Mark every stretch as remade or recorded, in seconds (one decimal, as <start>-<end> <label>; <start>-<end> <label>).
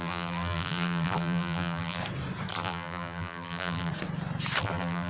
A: 0.0-2.0 remade; 2.0-2.5 recorded; 2.5-3.9 remade; 3.9-4.6 recorded; 4.6-5.1 remade